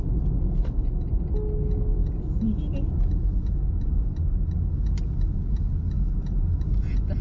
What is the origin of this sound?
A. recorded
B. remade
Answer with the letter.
A